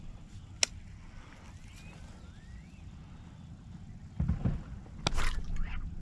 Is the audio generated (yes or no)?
no